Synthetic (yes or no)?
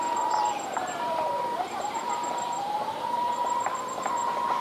yes